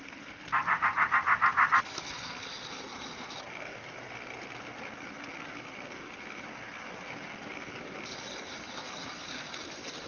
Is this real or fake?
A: real